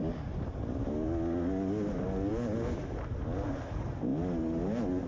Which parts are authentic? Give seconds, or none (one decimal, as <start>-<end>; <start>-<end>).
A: 0.9-5.1